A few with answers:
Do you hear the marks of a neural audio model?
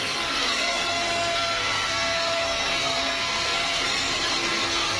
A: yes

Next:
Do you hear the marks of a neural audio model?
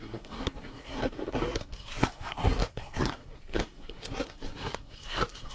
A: yes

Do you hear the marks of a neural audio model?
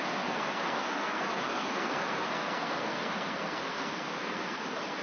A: yes